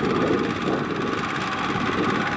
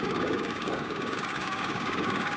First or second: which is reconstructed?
second